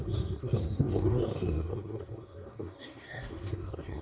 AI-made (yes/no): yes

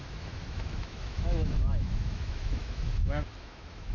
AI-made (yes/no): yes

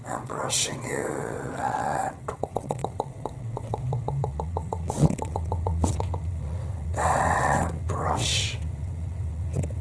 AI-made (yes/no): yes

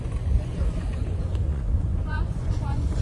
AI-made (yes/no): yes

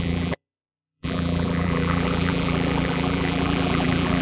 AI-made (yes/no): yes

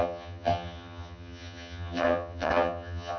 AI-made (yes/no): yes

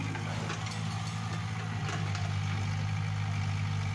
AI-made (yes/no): no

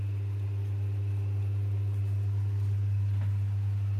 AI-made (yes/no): no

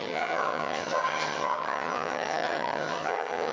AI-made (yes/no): yes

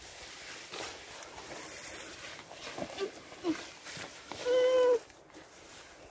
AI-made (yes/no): no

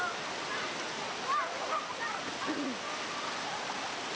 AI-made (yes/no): no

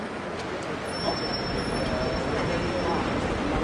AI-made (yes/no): no